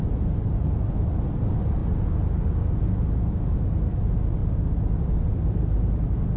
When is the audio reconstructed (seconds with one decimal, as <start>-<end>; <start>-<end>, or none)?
0.0-1.8; 2.8-6.4